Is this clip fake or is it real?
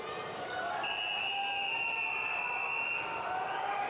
real